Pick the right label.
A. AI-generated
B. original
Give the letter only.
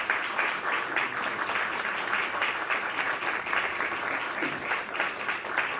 B